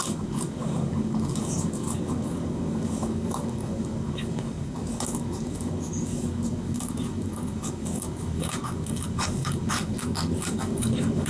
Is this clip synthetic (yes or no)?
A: yes